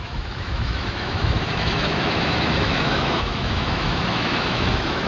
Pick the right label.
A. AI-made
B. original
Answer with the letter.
A